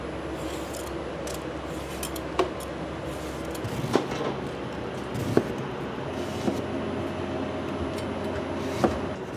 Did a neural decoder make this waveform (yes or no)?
no